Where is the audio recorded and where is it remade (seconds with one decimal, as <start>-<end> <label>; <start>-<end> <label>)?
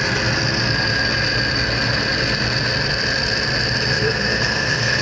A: 0.0-3.9 recorded; 3.9-5.0 remade